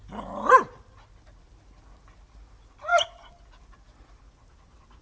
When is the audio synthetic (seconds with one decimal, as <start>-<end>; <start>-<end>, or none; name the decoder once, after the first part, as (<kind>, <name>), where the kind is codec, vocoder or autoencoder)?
none